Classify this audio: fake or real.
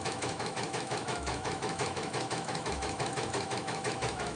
fake